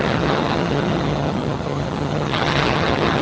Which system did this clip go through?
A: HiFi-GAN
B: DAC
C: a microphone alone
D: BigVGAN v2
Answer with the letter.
A